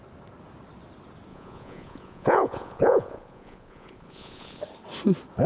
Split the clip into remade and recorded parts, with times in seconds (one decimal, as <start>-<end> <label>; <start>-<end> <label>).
0.0-1.3 recorded; 1.3-4.6 remade; 4.6-5.5 recorded